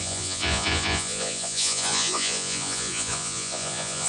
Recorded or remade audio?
remade